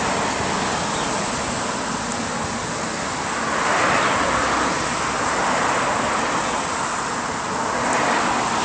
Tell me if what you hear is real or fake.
real